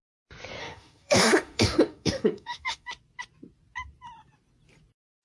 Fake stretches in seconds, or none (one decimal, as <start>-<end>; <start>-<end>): 0.6-2.9